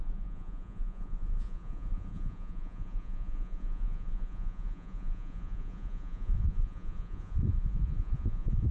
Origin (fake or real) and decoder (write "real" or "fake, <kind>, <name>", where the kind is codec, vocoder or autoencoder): fake, vocoder, Vocos